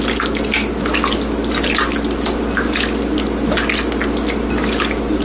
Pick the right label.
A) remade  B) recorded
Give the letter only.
B